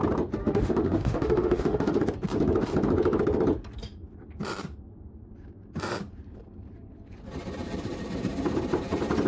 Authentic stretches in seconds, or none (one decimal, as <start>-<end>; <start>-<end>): 0.0-0.4; 2.0-9.3